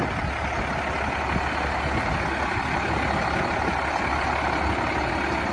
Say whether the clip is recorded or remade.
recorded